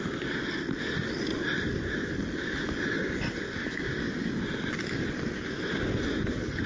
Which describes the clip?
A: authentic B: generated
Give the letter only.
A